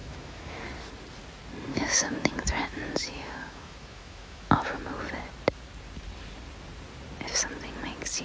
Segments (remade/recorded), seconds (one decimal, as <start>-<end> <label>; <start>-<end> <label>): 0.0-0.6 remade; 0.6-1.7 recorded; 1.7-4.8 remade; 4.8-8.2 recorded